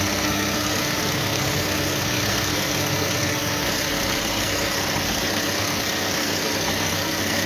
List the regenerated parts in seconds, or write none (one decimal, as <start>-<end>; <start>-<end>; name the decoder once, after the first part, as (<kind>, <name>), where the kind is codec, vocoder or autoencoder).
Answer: 0.0-7.5 (codec, SNAC)